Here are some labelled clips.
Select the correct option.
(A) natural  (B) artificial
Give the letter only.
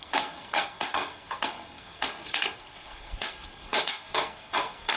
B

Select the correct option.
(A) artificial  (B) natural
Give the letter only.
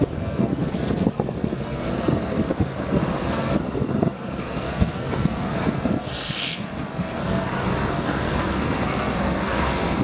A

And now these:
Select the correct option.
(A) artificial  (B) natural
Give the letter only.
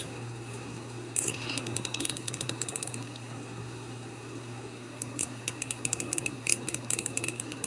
A